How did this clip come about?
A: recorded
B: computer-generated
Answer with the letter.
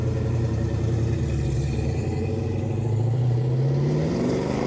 B